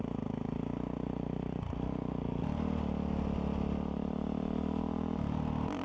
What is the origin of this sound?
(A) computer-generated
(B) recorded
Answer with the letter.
B